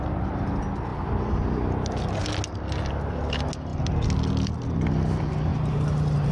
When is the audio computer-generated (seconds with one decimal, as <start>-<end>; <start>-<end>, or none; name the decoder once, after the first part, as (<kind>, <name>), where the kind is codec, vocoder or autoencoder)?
5.5-6.3 (vocoder, BigVGAN v2)